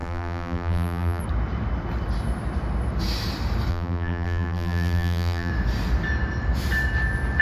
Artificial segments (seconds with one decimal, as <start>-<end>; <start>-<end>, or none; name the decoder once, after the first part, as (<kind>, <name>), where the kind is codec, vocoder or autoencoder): 0.0-1.2 (vocoder, BigVGAN v2); 3.7-5.5